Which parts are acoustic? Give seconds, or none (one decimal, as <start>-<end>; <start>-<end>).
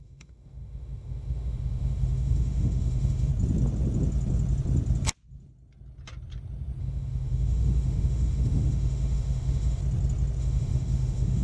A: 3.3-6.8; 9.8-10.4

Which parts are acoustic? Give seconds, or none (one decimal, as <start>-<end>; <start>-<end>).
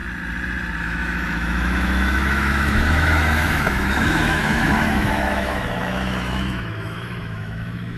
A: 0.0-0.8